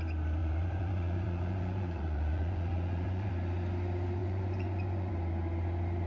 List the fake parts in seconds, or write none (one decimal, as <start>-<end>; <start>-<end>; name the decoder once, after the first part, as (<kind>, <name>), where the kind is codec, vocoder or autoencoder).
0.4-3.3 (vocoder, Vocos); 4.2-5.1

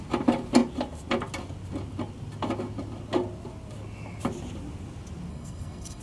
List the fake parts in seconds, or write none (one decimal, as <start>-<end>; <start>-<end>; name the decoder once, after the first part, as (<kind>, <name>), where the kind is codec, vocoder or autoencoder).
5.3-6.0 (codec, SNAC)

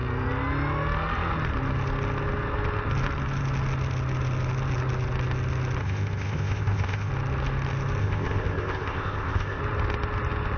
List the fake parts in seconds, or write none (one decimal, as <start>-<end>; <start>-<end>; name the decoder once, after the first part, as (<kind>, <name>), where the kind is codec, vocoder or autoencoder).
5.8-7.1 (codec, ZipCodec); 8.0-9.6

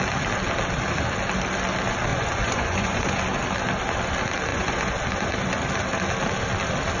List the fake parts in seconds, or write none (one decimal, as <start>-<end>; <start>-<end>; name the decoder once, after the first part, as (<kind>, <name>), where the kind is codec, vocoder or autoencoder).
2.1-3.1 (vocoder, Vocos); 4.5-5.0

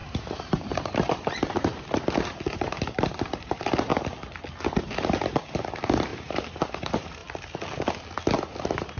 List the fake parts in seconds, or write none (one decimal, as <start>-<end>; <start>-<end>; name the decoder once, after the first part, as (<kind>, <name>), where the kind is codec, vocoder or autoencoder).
0.0-3.9 (vocoder, BigVGAN v2); 4.8-7.2; 8.6-9.0